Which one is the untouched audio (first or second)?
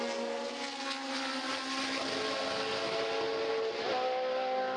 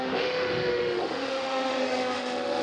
first